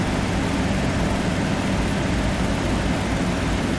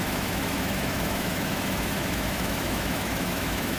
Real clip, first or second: first